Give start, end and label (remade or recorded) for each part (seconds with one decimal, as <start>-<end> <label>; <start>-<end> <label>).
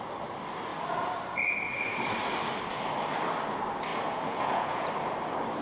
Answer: 0.0-3.9 recorded; 3.9-4.9 remade; 4.9-5.6 recorded